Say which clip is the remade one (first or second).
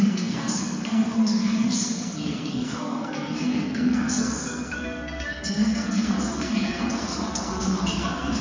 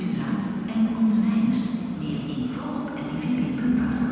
first